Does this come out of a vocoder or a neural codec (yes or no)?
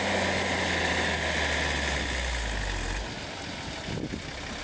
no